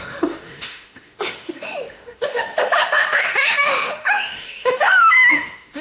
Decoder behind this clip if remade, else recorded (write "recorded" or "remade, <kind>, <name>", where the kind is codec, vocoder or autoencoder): remade, autoencoder, DAC-VAE